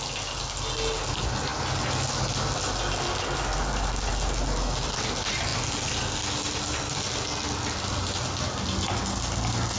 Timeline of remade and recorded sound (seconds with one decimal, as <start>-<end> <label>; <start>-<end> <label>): 0.0-9.8 recorded